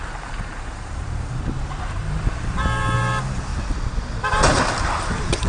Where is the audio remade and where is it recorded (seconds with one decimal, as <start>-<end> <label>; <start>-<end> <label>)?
0.0-3.5 remade; 3.5-4.9 recorded; 4.9-5.5 remade